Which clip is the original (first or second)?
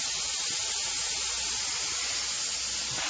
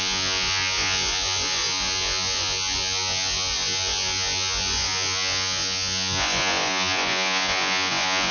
first